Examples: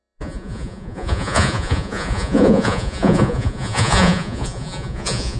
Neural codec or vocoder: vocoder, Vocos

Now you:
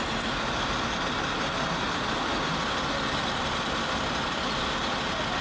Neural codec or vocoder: none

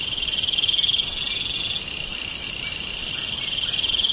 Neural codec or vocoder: none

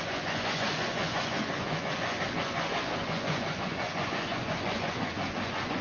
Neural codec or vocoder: vocoder, Vocos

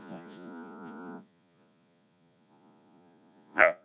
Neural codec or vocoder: vocoder, Vocos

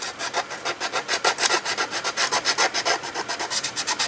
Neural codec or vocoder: none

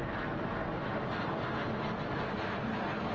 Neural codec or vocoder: none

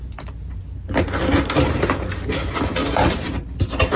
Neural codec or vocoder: none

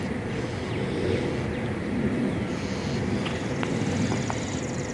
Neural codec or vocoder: none